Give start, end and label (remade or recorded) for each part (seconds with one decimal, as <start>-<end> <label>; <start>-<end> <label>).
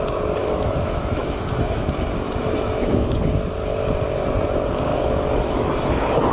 0.0-0.4 recorded; 0.4-3.3 remade; 3.3-4.9 recorded; 4.9-5.7 remade; 5.7-6.3 recorded